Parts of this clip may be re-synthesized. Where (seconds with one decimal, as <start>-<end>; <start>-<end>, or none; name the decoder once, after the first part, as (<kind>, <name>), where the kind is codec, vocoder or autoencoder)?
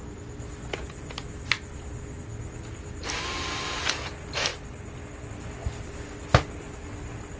none